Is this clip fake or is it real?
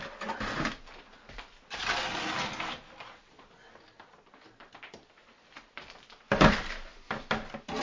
real